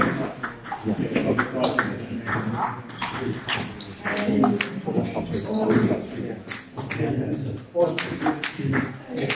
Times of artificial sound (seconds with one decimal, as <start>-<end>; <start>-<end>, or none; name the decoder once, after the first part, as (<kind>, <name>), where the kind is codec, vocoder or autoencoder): none